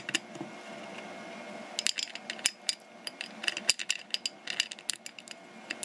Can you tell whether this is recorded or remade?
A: recorded